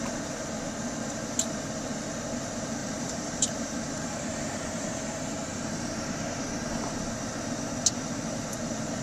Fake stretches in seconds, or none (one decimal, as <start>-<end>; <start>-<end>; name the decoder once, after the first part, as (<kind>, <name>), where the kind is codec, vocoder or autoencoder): 2.8-6.5 (vocoder, BigVGAN v2)